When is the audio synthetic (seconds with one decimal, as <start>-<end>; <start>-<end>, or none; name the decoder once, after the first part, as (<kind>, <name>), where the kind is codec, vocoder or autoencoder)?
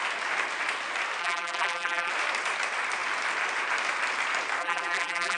1.2-2.1 (vocoder, BigVGAN v2); 4.6-5.4